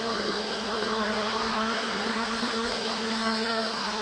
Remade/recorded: remade